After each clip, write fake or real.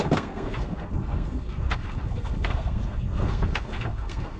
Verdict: fake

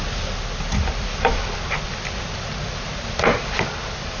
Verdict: real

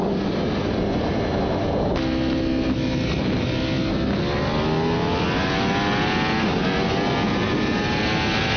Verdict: real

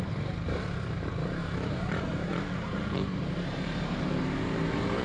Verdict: fake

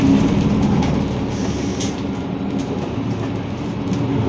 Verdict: real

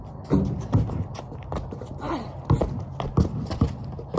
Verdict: real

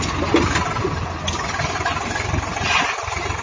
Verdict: real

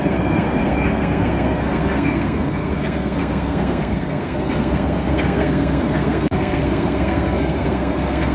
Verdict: fake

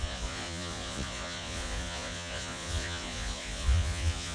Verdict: fake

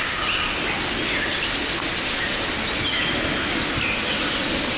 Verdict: real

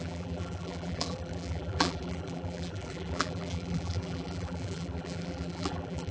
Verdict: fake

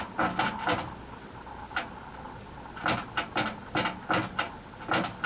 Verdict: real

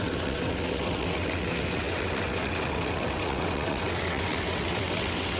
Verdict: fake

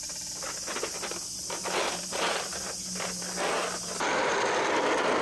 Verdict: real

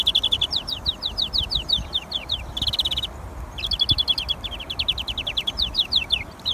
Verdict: real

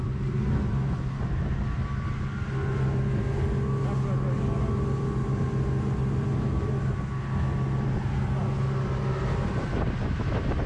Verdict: real